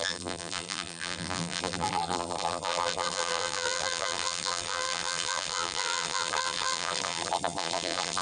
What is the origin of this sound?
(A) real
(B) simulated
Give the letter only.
B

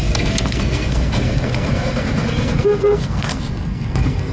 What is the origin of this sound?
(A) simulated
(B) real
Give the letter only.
A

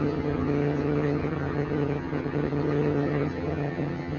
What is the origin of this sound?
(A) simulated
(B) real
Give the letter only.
A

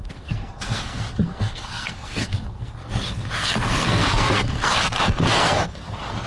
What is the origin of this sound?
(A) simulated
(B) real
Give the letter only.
A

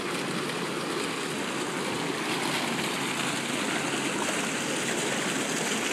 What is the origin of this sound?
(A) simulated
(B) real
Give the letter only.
B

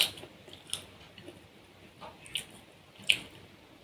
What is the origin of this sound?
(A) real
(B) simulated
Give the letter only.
A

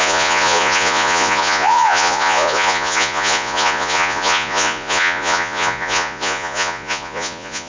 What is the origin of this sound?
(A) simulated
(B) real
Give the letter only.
A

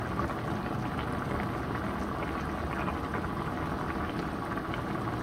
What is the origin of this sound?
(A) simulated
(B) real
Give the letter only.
B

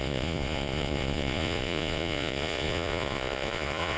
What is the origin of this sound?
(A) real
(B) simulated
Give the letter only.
B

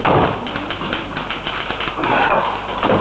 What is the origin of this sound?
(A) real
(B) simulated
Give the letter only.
A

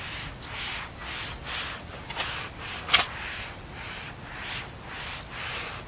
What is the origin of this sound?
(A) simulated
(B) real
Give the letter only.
B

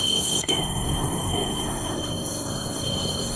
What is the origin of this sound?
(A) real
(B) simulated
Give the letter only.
B